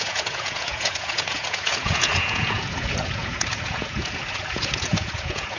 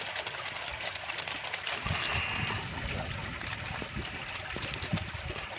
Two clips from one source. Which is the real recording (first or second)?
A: second